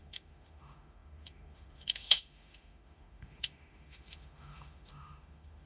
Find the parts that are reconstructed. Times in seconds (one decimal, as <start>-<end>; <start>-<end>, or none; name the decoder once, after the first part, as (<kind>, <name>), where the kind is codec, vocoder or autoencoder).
0.0-5.7 (autoencoder, DAC-VAE)